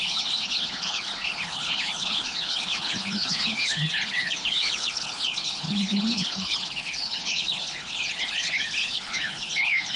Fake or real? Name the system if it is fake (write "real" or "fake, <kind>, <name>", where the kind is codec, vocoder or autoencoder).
fake, codec, HILCodec